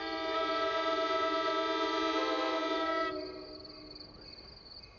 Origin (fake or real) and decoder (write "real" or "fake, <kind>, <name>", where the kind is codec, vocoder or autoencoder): real